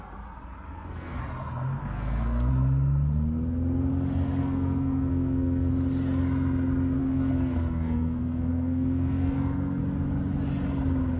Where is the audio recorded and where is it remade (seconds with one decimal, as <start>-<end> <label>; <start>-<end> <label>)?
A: 0.0-0.7 recorded; 0.7-1.2 remade; 1.2-1.8 recorded; 1.8-2.5 remade; 2.5-4.4 recorded; 4.4-5.7 remade; 5.7-7.0 recorded; 7.0-9.8 remade; 9.8-11.2 recorded